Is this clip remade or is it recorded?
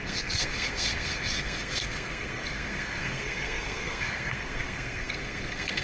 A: remade